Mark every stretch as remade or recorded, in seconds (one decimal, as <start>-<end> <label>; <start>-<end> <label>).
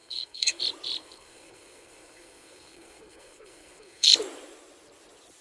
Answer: 0.0-0.6 remade; 0.6-1.0 recorded; 1.0-4.1 remade; 4.1-5.4 recorded